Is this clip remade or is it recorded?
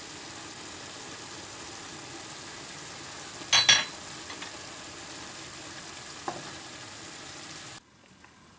recorded